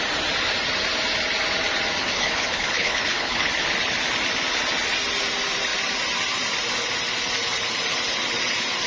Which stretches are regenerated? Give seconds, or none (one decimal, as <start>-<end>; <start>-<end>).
2.0-3.5